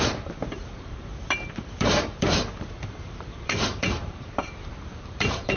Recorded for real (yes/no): no